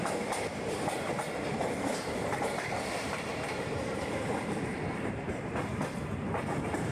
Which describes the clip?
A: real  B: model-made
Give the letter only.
B